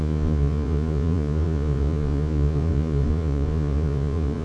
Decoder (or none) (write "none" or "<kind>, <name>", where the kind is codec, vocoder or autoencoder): vocoder, Vocos